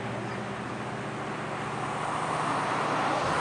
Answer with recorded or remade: recorded